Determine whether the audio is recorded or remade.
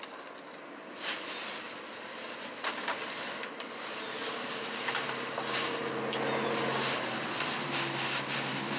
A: recorded